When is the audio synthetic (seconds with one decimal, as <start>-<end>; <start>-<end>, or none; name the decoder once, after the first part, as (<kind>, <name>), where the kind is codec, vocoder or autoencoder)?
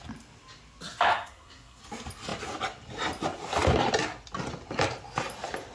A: 1.1-1.8 (codec, SNAC)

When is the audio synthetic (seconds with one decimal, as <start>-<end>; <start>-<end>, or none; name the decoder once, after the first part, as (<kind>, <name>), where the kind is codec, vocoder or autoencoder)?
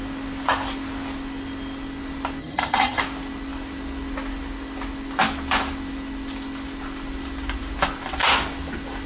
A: 2.4-3.0 (vocoder, HiFi-GAN)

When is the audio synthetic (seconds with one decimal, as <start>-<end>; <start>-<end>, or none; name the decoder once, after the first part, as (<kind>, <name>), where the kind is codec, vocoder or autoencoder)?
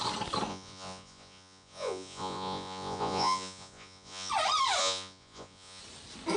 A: 0.5-4.3 (vocoder, Vocos); 4.8-5.8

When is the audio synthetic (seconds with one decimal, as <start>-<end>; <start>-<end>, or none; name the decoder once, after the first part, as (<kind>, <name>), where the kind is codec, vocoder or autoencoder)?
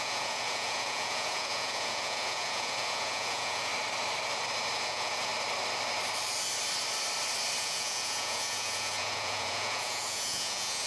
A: 0.0-3.7 (vocoder, Vocos); 4.8-5.3; 7.6-10.9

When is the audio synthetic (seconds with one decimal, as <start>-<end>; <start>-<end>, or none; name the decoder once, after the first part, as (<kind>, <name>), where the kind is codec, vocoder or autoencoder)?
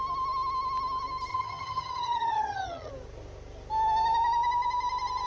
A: 1.3-2.9 (vocoder, HiFi-GAN)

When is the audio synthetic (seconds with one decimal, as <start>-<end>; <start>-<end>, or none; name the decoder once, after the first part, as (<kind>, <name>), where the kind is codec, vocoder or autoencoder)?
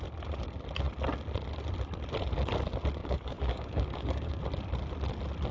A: 3.0-4.4 (codec, DAC)